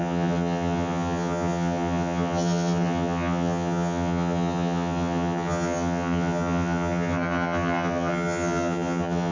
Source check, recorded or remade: remade